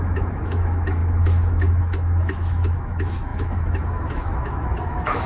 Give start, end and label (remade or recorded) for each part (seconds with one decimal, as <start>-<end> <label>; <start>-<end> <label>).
0.0-5.3 remade